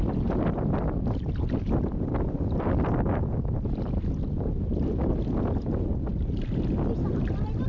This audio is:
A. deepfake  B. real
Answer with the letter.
B